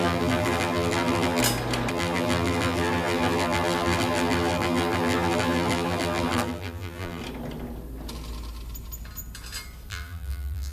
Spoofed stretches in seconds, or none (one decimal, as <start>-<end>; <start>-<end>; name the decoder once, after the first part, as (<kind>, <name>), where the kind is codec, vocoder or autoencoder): 0.0-1.4 (vocoder, BigVGAN v2); 1.9-7.2; 9.9-10.7